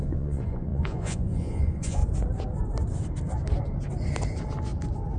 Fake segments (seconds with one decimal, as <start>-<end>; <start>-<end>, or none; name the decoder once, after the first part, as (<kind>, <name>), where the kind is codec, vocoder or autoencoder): 0.0-2.0 (vocoder, Vocos)